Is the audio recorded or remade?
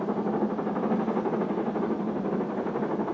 recorded